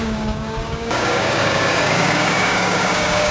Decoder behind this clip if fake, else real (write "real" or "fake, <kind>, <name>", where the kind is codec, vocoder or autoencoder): fake, codec, DAC